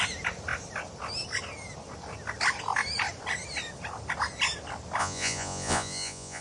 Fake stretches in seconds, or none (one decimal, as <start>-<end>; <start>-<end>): 5.0-6.4